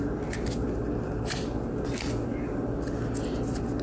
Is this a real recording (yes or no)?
yes